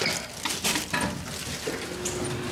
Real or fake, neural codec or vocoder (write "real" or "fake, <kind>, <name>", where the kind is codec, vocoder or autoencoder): real